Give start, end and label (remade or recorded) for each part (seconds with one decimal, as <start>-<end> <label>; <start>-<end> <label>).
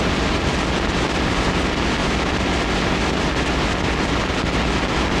0.0-5.2 recorded